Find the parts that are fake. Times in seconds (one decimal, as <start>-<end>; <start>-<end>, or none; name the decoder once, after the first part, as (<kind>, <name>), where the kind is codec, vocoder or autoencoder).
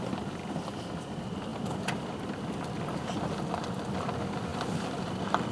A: 1.5-2.2 (vocoder, BigVGAN v2)